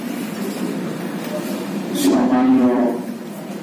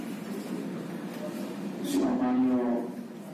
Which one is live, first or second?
second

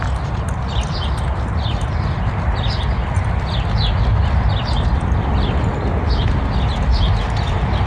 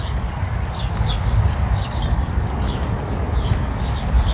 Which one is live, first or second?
first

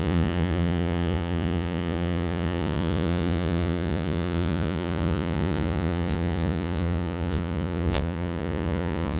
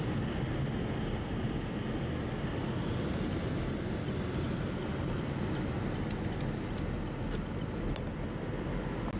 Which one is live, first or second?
second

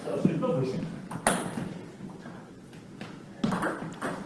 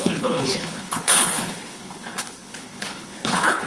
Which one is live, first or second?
first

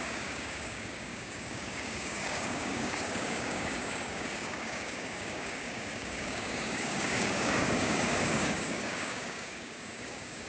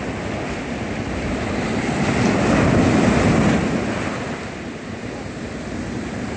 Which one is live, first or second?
second